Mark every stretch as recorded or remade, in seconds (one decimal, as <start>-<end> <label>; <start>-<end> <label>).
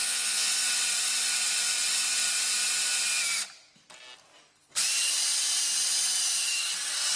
0.0-0.5 remade; 0.5-7.2 recorded